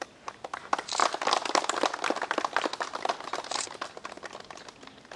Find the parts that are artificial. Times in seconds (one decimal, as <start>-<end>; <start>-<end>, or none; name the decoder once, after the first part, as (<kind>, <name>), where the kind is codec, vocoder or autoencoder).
none